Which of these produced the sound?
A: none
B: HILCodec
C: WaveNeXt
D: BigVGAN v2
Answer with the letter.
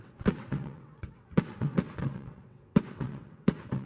C